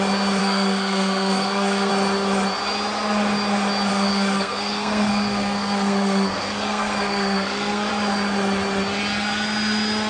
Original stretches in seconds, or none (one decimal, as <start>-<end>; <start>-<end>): 0.0-0.4; 1.9-3.9; 7.9-10.1